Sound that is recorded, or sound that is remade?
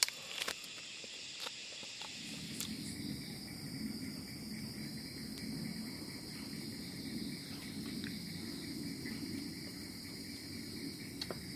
recorded